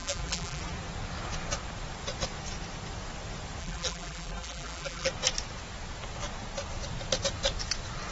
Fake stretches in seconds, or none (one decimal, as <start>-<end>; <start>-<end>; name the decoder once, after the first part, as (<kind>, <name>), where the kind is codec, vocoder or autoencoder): 0.0-0.6 (vocoder, BigVGAN v2); 3.6-5.1